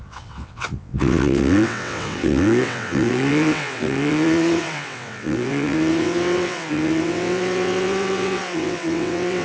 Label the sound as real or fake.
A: fake